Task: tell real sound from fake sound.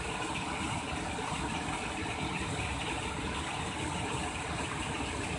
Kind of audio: real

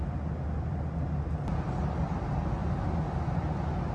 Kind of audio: real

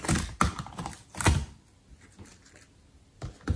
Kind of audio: real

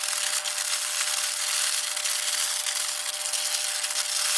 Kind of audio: real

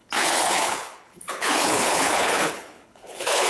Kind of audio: fake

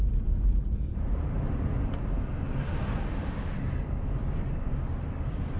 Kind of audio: real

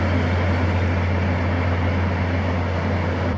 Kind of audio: real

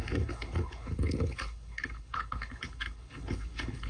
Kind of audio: fake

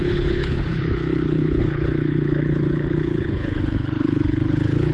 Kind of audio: fake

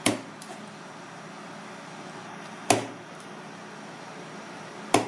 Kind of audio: real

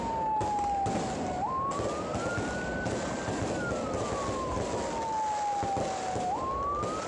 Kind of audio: real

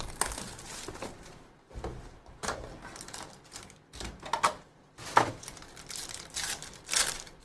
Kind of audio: real